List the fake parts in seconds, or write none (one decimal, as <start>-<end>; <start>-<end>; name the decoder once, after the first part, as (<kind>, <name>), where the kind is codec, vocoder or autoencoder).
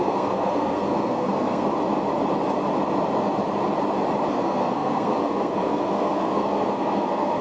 0.0-1.7 (codec, SNAC); 4.3-7.4